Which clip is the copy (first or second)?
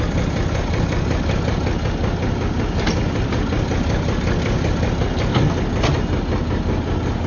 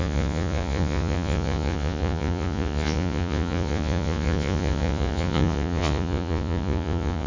second